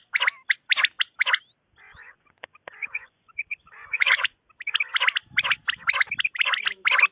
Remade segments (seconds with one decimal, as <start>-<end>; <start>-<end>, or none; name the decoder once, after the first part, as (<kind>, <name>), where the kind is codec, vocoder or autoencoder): 1.8-4.4 (vocoder, Vocos)